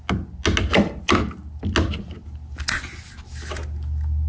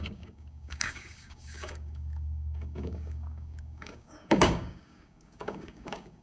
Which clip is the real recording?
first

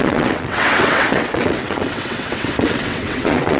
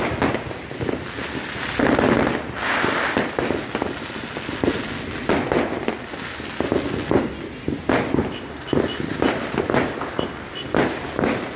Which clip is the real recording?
second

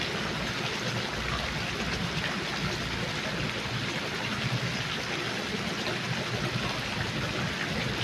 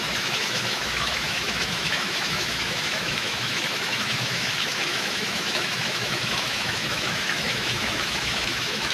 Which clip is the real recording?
first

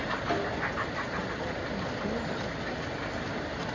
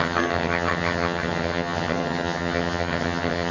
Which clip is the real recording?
first